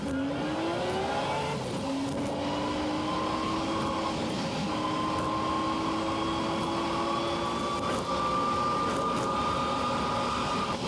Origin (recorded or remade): recorded